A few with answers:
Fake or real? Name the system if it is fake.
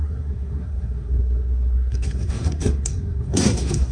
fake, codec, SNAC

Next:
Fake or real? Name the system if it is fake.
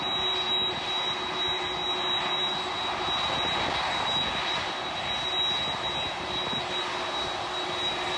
real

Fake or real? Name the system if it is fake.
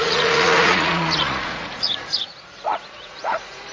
fake, vocoder, Vocos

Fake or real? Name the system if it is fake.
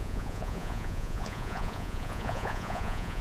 fake, vocoder, Vocos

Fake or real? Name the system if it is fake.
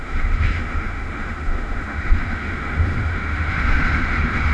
fake, autoencoder, DAC-VAE